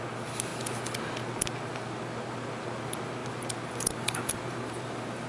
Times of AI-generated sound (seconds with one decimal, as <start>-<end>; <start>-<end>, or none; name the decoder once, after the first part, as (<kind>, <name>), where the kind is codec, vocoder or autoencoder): 3.2-5.3 (vocoder, BigVGAN v2)